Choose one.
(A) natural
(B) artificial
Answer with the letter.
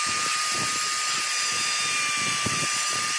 A